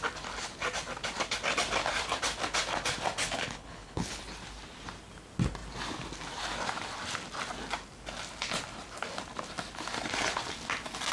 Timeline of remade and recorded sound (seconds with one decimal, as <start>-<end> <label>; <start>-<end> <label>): 0.0-3.2 recorded; 3.2-4.2 remade; 4.2-11.1 recorded